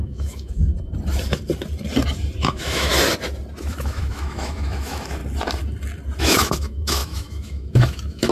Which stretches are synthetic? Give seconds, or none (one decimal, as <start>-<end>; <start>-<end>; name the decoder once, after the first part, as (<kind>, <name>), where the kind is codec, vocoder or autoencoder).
0.0-0.7 (autoencoder, DAC-VAE); 2.4-2.9; 3.6-5.2; 6.2-8.3